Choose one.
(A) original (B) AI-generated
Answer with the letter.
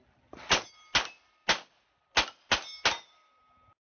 A